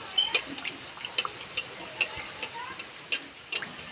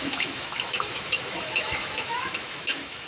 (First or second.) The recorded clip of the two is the first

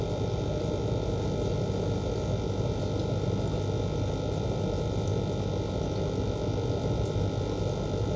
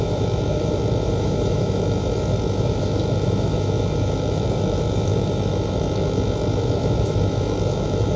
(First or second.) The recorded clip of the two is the first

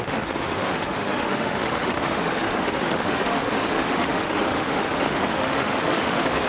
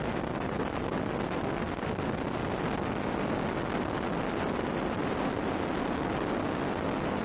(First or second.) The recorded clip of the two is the second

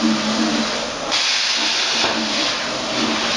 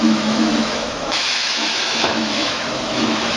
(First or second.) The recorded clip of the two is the first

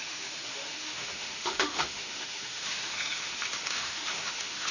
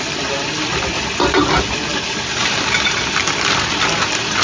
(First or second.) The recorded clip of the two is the second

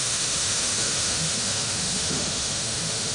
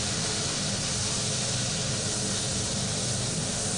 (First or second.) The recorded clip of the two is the second